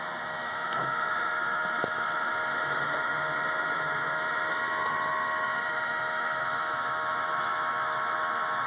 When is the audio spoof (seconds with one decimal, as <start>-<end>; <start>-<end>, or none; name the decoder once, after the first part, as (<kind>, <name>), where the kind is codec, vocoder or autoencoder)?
0.0-8.7 (autoencoder, DAC-VAE)